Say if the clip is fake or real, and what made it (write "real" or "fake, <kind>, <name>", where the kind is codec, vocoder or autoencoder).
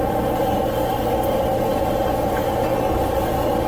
real